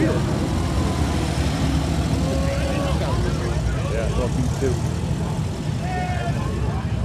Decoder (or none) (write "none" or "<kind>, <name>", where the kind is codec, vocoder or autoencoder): none